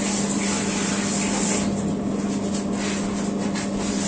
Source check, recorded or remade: recorded